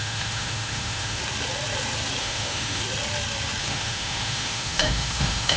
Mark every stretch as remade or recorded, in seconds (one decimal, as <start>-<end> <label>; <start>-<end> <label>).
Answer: 0.0-1.2 remade; 1.2-2.2 recorded; 2.2-2.8 remade; 2.8-3.6 recorded; 3.6-5.6 remade